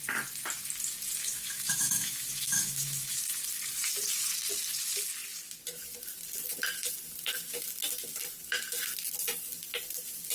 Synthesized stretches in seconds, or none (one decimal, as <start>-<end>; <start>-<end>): 1.2-3.2